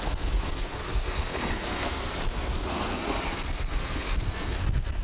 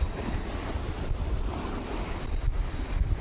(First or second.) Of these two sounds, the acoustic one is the second